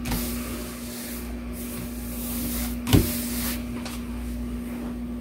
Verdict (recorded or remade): recorded